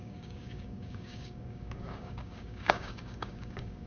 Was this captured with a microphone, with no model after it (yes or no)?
no